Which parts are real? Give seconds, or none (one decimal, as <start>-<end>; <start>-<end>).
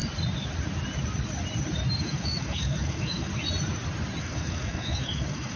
0.0-2.0; 3.3-4.2